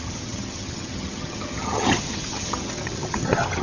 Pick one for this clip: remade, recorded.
remade